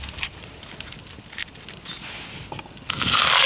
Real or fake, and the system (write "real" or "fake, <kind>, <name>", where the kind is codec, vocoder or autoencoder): real